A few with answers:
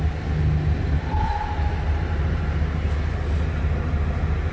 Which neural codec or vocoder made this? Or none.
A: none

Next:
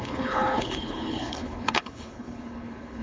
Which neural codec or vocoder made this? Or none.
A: codec, HILCodec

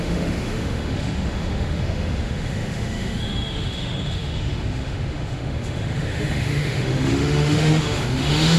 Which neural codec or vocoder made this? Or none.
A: autoencoder, DAC-VAE